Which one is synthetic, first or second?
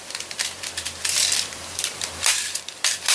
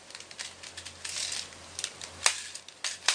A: first